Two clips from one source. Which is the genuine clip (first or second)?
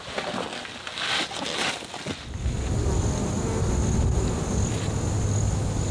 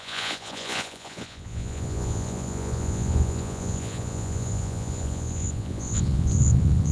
first